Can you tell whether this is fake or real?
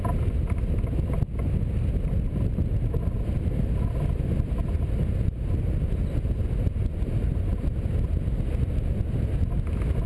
real